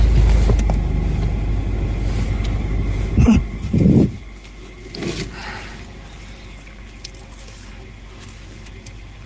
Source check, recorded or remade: recorded